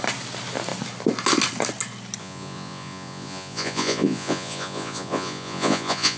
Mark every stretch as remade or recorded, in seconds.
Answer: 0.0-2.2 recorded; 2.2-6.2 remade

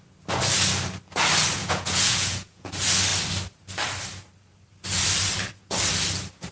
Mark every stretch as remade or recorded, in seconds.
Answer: 0.0-1.6 recorded; 1.6-2.7 remade; 2.7-6.5 recorded